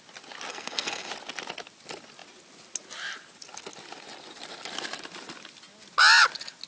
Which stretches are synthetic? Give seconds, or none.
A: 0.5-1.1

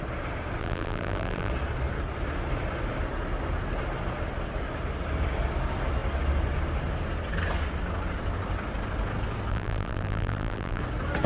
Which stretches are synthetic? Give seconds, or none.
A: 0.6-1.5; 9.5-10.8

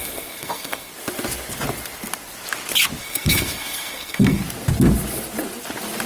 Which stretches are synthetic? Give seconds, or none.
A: 0.0-0.9; 3.0-4.4